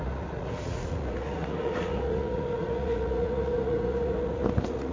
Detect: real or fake fake